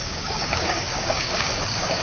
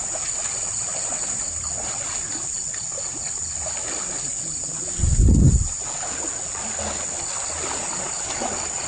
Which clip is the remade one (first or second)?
first